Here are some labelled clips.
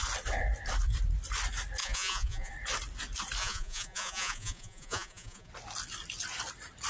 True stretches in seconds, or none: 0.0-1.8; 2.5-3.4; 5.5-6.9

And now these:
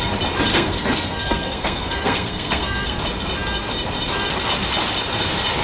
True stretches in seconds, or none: 0.0-0.5; 3.0-5.6